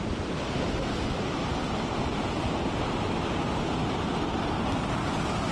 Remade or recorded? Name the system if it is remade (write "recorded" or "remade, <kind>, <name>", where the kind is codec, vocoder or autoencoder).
recorded